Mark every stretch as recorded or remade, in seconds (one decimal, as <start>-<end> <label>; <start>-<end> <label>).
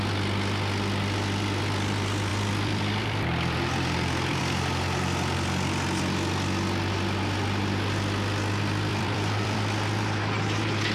0.0-2.3 recorded; 2.3-4.4 remade; 4.4-8.9 recorded; 8.9-9.6 remade; 9.6-10.9 recorded